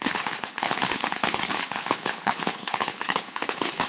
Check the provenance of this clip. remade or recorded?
remade